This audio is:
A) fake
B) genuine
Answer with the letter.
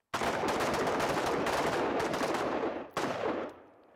B